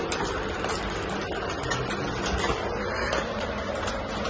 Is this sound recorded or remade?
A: recorded